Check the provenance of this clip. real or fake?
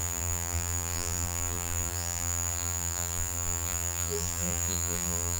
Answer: fake